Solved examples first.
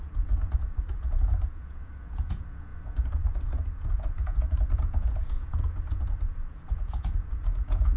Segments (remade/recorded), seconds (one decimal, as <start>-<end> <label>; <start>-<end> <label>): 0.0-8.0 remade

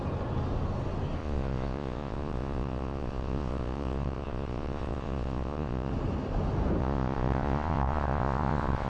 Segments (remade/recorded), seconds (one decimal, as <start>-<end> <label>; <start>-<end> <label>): 0.0-1.2 recorded; 1.2-5.9 remade; 5.9-6.8 recorded; 6.8-8.9 remade

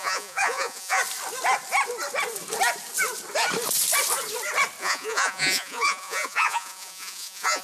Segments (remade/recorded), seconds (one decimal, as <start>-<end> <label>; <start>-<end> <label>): 0.0-1.0 remade; 1.0-4.8 recorded; 4.8-7.6 remade